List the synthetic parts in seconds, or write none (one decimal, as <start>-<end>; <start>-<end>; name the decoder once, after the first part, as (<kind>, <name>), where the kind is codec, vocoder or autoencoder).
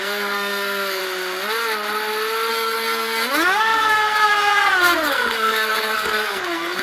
0.0-1.0 (codec, SNAC); 2.5-6.8